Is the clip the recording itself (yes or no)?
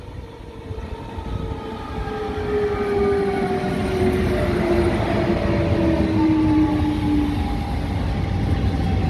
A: yes